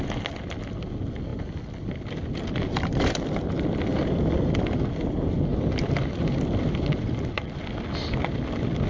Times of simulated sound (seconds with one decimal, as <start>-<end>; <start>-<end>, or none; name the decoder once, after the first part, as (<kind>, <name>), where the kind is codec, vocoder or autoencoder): 1.3-2.4 (vocoder, BigVGAN v2); 5.5-7.3